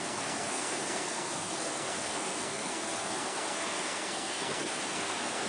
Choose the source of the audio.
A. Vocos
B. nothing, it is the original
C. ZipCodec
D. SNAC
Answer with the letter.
D